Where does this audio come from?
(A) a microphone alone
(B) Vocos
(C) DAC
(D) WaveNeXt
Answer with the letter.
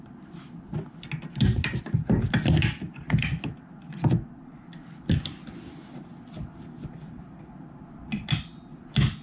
A